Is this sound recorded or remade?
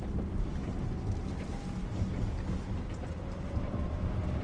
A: recorded